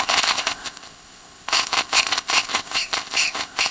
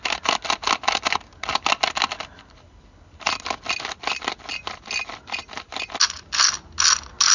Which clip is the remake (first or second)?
first